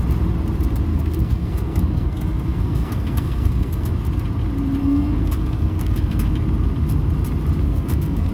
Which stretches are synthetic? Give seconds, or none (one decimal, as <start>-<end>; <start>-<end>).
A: 0.9-3.9; 4.8-6.3; 7.6-8.3